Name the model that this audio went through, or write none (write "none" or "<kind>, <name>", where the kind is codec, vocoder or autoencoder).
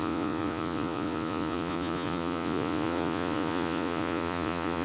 vocoder, Vocos